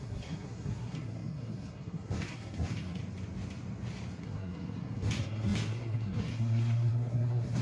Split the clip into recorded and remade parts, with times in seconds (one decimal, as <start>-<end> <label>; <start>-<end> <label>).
0.0-3.0 remade; 3.0-4.2 recorded; 4.2-7.6 remade